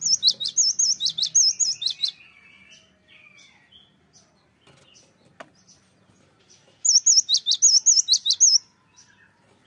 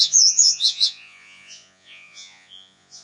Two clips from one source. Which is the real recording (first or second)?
first